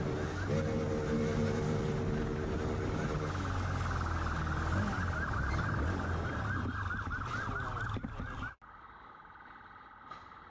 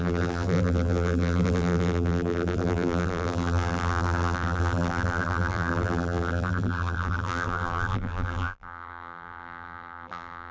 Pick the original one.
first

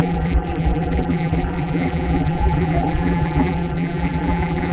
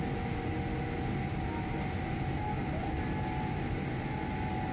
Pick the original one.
second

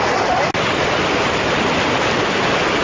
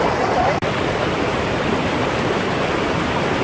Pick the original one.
first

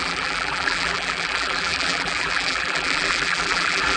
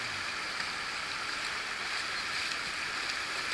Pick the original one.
second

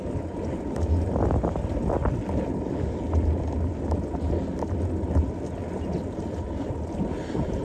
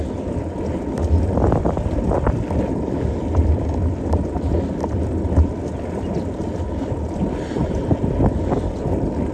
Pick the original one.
first